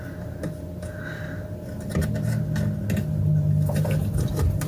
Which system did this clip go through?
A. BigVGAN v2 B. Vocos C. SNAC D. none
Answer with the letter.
D